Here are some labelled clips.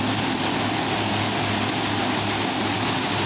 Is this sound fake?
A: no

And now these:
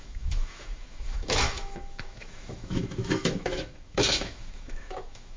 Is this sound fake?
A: yes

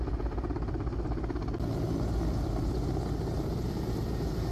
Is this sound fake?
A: no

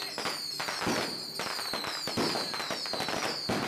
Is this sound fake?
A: no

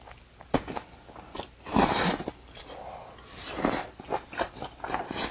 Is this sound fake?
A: no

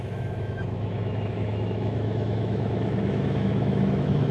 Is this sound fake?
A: yes